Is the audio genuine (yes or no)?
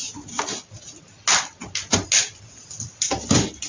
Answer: yes